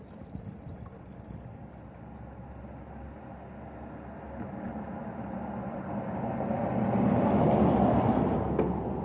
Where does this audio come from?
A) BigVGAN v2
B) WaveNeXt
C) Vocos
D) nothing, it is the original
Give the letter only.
A